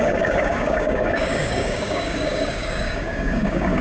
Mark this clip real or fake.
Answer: fake